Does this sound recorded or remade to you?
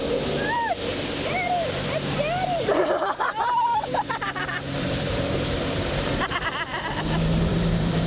remade